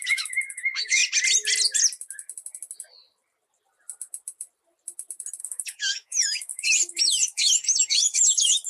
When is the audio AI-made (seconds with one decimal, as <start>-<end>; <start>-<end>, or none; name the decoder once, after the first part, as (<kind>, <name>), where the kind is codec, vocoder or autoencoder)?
0.0-1.0 (autoencoder, DAC-VAE); 5.4-8.7